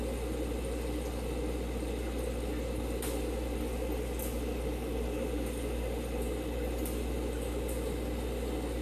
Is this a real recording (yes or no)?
yes